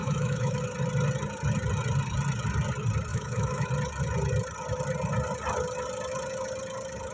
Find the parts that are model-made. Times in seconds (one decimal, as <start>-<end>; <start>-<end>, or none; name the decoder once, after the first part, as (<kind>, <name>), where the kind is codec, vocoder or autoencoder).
0.0-0.6 (autoencoder, DAC-VAE); 3.1-3.7